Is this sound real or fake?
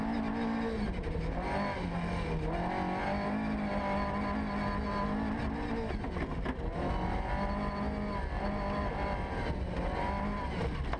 real